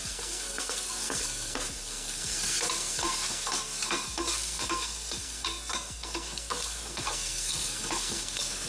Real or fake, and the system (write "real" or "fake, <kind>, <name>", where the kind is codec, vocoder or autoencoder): fake, codec, SNAC